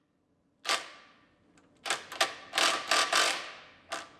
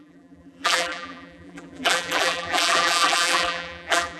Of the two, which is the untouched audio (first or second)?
first